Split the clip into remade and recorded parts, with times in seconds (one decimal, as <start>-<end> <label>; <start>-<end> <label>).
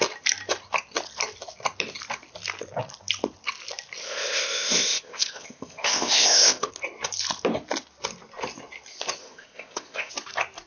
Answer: 0.0-4.0 recorded; 4.0-6.7 remade; 6.7-9.2 recorded; 9.2-10.1 remade; 10.1-10.7 recorded